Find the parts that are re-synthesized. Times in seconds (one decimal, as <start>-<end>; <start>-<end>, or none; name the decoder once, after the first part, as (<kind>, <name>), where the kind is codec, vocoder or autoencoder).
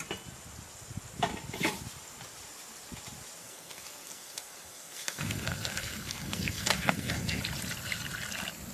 3.4-7.4 (codec, SNAC)